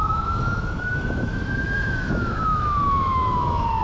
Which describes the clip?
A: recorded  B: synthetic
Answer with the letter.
B